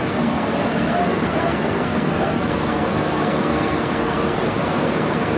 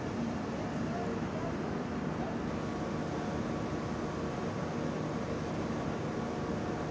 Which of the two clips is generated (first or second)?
first